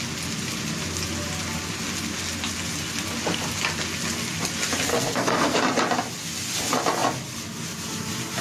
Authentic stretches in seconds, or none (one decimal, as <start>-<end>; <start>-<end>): 0.0-4.9; 5.6-8.4